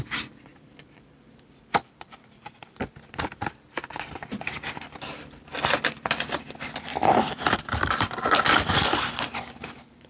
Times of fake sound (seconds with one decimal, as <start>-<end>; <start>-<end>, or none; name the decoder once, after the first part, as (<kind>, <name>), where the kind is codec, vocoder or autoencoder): 0.0-10.1 (vocoder, BigVGAN v2)